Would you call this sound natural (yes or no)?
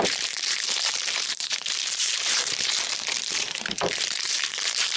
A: no